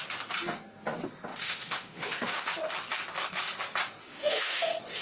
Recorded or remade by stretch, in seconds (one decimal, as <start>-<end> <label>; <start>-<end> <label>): 0.0-1.3 recorded; 1.3-2.5 remade; 2.5-4.0 recorded; 4.0-5.0 remade